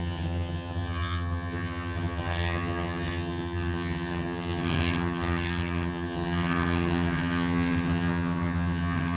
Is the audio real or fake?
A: fake